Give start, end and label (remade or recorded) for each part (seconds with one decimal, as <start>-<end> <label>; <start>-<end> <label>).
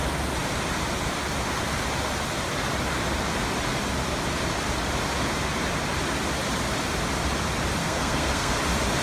0.0-7.8 recorded; 7.8-8.6 remade; 8.6-9.0 recorded